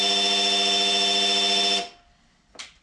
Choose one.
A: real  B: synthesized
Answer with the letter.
A